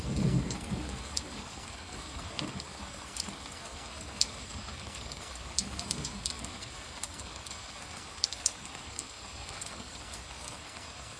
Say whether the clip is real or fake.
fake